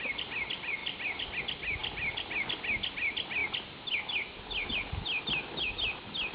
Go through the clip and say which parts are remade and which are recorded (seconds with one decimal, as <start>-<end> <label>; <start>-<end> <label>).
0.0-6.3 recorded